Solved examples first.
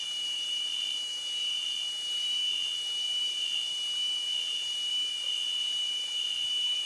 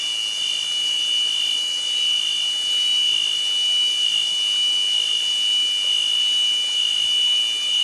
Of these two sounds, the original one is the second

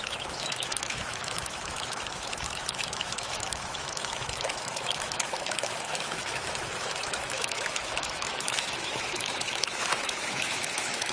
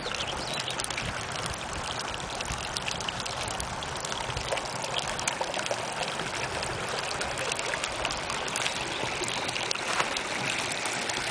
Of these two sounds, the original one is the second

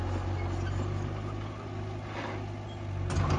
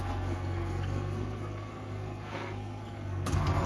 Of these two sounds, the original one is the first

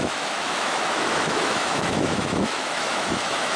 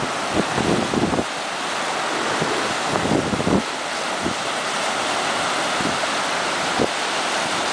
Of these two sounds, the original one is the second